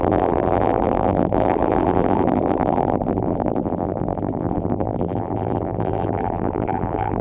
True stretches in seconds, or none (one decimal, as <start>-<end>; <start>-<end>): none